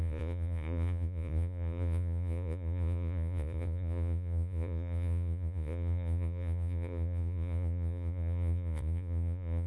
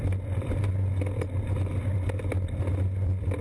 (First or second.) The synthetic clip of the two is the first